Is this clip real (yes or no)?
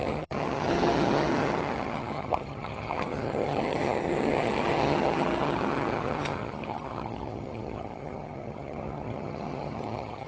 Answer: no